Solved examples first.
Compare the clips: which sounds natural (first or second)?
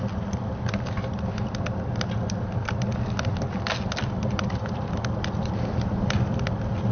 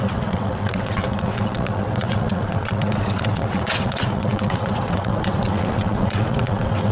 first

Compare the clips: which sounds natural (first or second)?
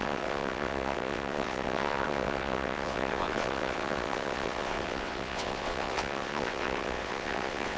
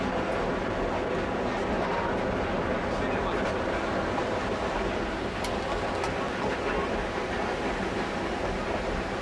second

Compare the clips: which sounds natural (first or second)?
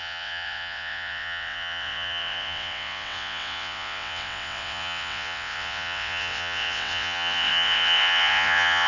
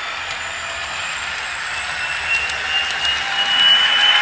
second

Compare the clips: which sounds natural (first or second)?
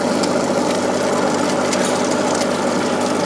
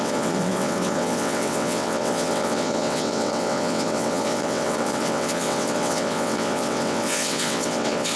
first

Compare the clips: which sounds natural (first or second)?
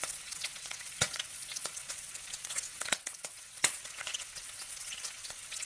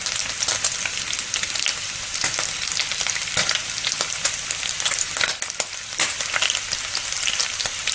second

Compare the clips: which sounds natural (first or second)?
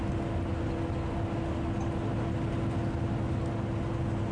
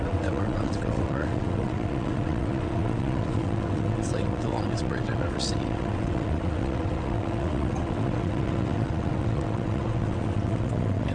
first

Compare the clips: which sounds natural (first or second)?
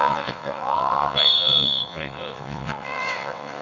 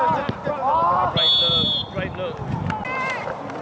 second